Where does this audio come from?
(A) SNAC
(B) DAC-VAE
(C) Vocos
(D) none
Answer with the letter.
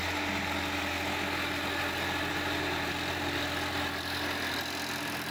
D